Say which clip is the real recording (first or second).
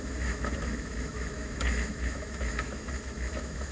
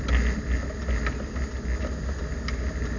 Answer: second